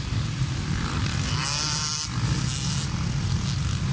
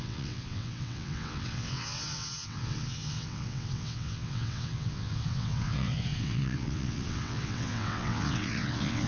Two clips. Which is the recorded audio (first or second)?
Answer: first